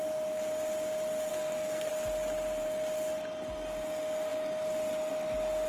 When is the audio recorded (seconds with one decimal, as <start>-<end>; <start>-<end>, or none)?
0.0-1.3; 1.9-5.7